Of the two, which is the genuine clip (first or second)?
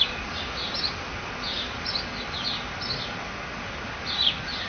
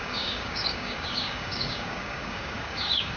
first